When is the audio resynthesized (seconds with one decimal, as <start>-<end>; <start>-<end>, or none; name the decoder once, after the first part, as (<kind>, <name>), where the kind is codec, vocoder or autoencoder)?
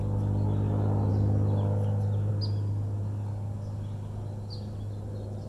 none